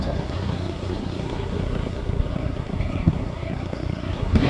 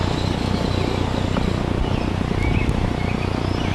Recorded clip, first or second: second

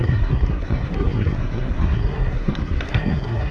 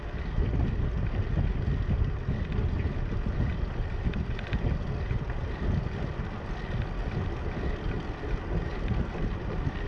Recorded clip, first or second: second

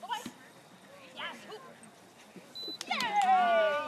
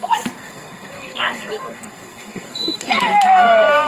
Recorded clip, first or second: first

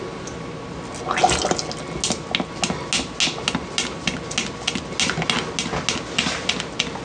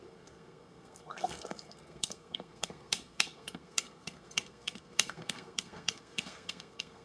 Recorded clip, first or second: first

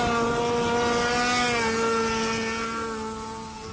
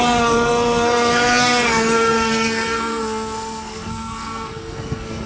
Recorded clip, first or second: first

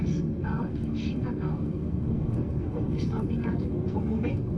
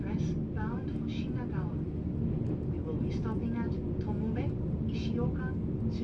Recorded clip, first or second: second